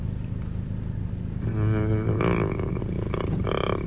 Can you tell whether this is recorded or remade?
recorded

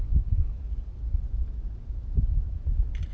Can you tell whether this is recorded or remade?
recorded